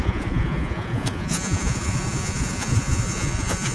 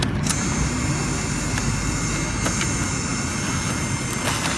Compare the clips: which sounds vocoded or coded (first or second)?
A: first